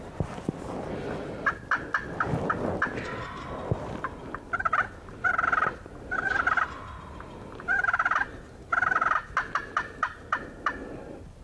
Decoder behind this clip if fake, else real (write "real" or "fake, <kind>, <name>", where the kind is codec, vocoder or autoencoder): real